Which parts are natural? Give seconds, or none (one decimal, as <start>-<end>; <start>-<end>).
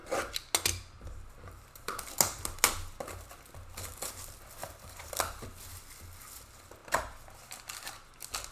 0.0-4.6; 5.1-8.5